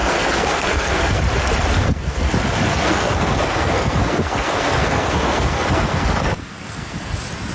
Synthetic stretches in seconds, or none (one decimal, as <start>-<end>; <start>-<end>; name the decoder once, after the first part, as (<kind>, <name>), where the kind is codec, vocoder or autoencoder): 0.0-1.2 (codec, SNAC); 1.8-2.3; 2.7-7.1